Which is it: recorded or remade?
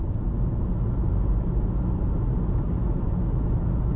recorded